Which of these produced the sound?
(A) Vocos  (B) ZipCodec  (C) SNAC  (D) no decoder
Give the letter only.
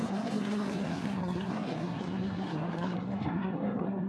C